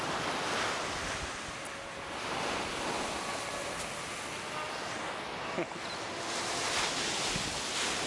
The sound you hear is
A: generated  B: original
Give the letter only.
B